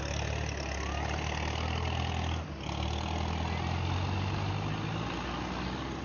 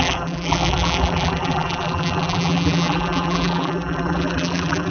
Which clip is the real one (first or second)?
first